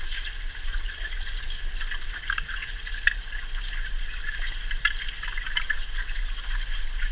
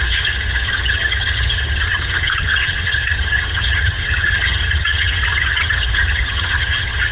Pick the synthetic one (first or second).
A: second